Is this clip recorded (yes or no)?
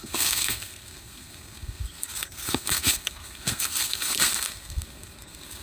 no